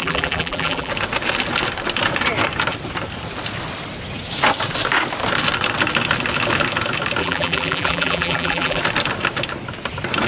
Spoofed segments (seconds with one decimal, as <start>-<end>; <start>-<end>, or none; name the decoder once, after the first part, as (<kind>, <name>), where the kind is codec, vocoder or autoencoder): 0.0-0.9 (vocoder, BigVGAN v2); 7.2-8.8